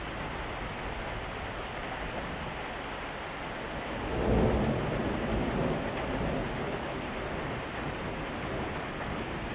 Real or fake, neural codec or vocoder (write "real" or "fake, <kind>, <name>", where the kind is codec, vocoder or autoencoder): real